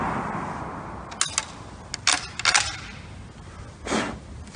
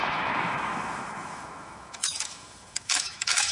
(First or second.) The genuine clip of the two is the first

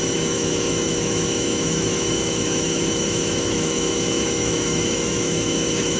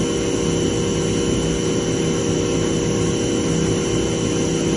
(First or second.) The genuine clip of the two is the second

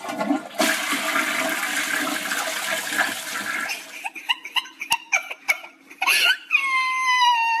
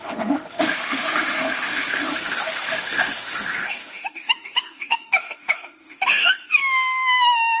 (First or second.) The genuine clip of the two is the first